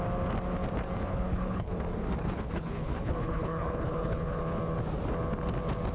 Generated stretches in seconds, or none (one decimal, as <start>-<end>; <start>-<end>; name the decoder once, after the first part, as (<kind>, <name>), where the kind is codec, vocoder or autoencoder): 1.1-1.8 (codec, HILCodec); 2.2-4.4